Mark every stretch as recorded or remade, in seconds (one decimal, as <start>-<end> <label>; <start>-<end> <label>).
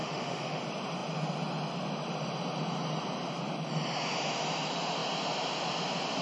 0.0-0.6 remade; 0.6-6.2 recorded